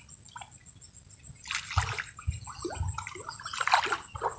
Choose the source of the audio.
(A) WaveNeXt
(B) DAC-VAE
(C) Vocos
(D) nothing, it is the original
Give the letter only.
D